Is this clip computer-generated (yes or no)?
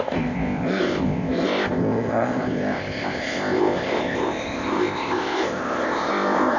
yes